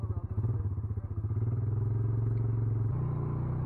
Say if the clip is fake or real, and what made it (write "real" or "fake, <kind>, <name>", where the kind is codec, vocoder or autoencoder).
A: real